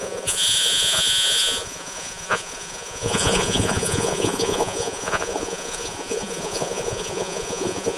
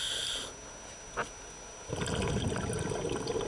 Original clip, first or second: second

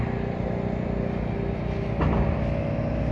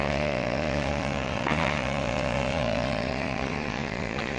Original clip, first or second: first